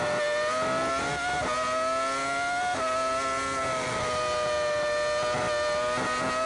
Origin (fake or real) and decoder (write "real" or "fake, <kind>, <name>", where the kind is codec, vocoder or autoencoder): real